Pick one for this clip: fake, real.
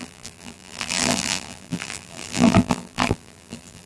fake